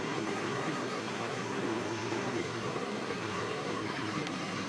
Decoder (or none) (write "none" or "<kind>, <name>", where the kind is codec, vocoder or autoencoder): codec, SNAC